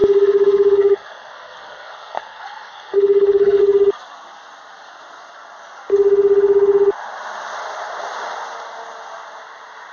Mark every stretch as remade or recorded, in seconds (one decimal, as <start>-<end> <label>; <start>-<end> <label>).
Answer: 0.0-3.6 remade; 3.6-9.9 recorded

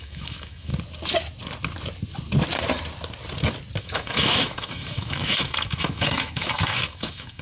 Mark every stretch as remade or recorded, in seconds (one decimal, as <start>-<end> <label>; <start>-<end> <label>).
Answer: 0.0-0.7 remade; 0.7-3.8 recorded; 3.8-7.4 remade

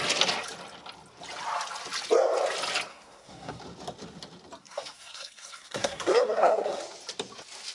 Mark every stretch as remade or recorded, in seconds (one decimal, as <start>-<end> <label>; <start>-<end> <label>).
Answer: 0.0-2.9 recorded; 2.9-3.6 remade; 3.6-4.6 recorded; 4.6-6.8 remade; 6.8-7.7 recorded